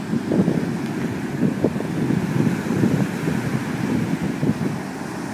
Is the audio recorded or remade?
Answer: recorded